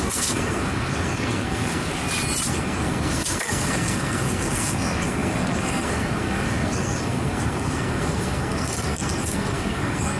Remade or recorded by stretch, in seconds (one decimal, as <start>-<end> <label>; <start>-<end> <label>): 0.0-1.9 remade; 1.9-2.5 recorded; 2.5-10.2 remade